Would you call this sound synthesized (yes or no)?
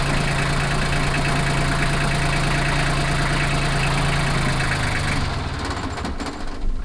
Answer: no